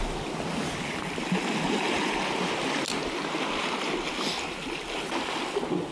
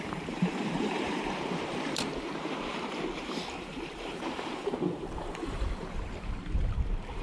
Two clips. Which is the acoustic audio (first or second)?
first